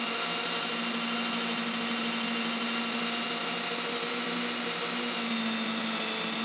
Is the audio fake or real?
real